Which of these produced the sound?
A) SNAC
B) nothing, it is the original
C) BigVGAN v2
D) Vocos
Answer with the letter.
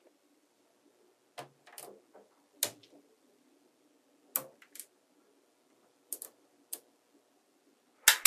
B